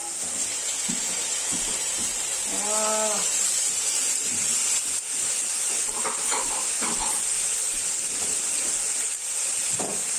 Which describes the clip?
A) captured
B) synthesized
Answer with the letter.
A